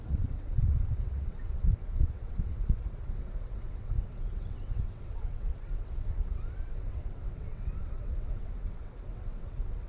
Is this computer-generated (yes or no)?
yes